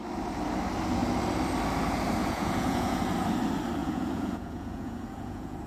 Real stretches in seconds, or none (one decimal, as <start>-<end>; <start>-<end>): 0.0-2.2; 3.0-3.8